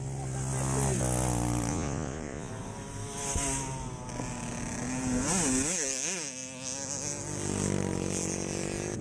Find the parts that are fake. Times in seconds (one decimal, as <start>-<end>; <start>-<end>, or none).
1.7-2.5